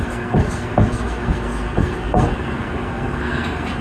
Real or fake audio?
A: fake